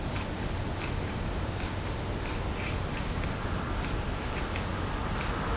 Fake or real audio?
real